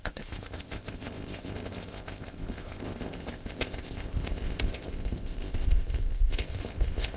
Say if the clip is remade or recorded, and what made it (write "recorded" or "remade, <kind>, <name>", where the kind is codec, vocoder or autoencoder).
remade, codec, ZipCodec